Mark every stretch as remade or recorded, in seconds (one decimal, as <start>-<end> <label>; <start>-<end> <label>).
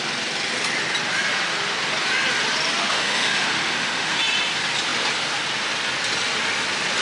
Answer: 0.0-2.8 recorded; 2.8-4.2 remade; 4.2-7.0 recorded